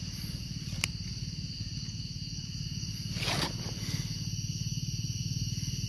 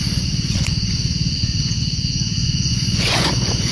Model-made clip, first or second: second